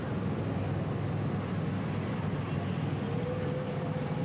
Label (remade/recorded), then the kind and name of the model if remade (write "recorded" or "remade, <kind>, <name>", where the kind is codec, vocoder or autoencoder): recorded